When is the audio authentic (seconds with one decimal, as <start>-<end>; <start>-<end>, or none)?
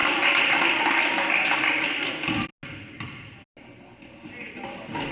0.0-5.1